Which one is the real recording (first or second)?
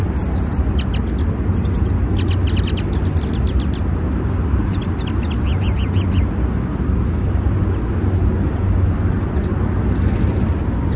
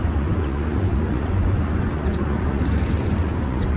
first